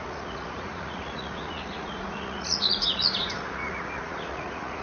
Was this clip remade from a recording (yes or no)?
yes